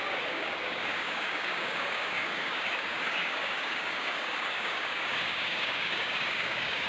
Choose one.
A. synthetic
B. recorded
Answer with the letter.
A